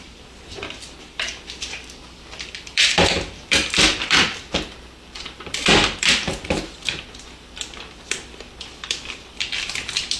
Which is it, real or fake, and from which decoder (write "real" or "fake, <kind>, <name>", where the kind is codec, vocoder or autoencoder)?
fake, vocoder, BigVGAN v2